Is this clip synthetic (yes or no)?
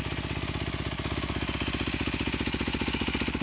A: no